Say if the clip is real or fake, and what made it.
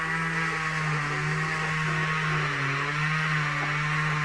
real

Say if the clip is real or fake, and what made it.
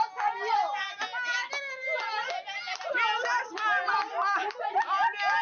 real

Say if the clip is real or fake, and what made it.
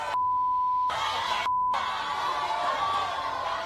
real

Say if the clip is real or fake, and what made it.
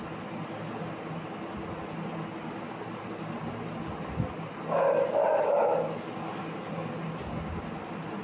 real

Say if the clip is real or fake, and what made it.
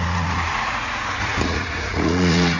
fake, vocoder, Vocos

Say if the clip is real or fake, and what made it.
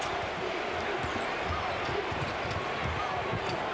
real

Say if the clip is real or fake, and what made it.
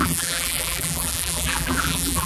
fake, vocoder, BigVGAN v2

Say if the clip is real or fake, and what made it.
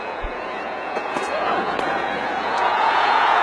fake, vocoder, Vocos